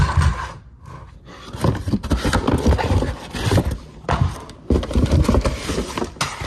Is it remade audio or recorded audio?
recorded